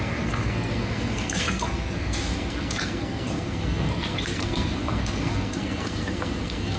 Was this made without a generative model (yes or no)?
no